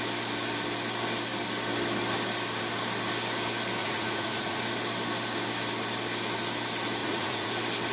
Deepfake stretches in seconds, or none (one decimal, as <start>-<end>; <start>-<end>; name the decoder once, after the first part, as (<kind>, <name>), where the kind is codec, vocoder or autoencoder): 3.8-4.6 (vocoder, Vocos); 7.0-7.5

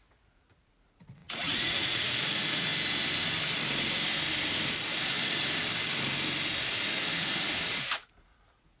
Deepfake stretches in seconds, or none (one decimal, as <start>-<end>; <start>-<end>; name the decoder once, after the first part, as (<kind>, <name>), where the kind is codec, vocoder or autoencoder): 0.0-2.7 (vocoder, Vocos); 7.1-8.8

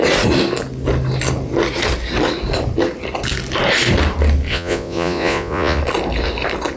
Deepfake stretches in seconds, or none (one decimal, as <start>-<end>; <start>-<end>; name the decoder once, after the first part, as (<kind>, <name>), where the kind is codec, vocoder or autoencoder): 4.5-5.8 (vocoder, Vocos)